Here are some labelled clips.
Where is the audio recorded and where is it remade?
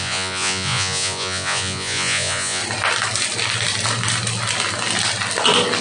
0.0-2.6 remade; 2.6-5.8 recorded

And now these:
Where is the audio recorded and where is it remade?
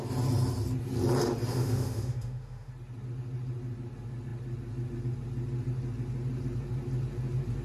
0.0-1.5 recorded; 1.5-2.7 remade; 2.7-7.6 recorded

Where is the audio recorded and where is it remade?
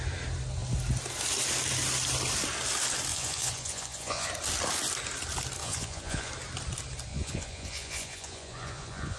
0.0-3.1 recorded; 3.1-4.3 remade; 4.3-5.6 recorded; 5.6-6.3 remade; 6.3-7.1 recorded; 7.1-9.2 remade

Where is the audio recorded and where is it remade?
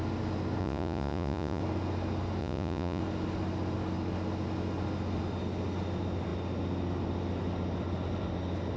0.0-0.6 recorded; 0.6-1.6 remade; 1.6-2.4 recorded; 2.4-3.0 remade; 3.0-8.8 recorded